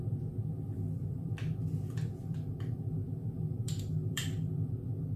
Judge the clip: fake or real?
fake